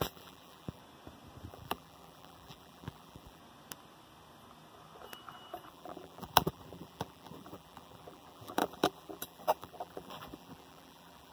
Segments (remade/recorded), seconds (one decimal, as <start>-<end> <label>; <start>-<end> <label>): 0.0-0.8 remade; 0.8-1.5 recorded; 1.5-3.4 remade; 3.4-5.7 recorded; 5.7-11.3 remade